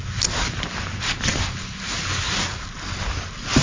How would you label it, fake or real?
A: real